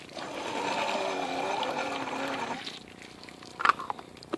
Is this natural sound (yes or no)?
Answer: yes